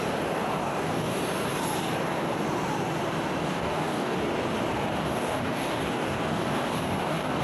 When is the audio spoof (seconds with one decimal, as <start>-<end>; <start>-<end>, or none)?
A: 0.6-1.2; 3.4-4.2; 5.0-7.4